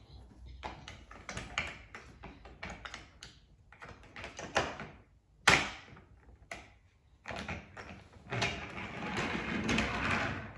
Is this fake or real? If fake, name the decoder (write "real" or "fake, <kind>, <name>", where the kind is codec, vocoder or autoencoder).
real